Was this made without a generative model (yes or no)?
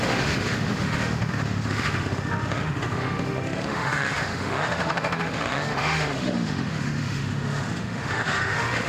no